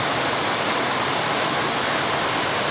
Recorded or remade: recorded